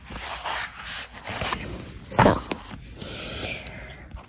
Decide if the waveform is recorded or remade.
recorded